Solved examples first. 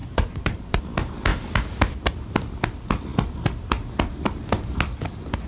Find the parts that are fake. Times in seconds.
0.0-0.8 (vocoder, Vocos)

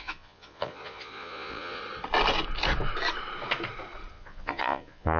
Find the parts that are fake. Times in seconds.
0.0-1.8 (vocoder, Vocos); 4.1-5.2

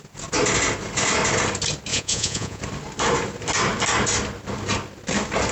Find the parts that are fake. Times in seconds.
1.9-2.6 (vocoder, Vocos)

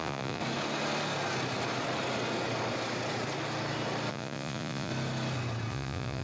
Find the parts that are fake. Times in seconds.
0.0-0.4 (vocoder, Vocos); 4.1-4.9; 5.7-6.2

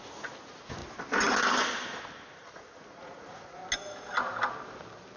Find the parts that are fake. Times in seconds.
0.0-0.8 (vocoder, Vocos); 2.3-3.6

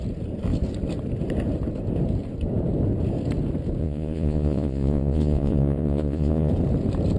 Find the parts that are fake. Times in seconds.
3.8-6.5 (vocoder, Vocos)